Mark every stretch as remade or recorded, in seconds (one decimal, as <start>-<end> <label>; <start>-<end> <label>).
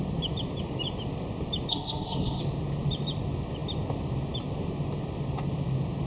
0.0-1.7 recorded; 1.7-2.4 remade; 2.4-6.1 recorded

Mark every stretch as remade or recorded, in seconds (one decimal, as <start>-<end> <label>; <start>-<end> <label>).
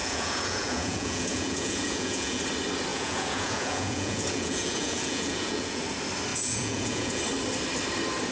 0.0-2.4 remade; 2.4-2.9 recorded; 2.9-5.8 remade; 5.8-6.3 recorded; 6.3-7.2 remade; 7.2-8.3 recorded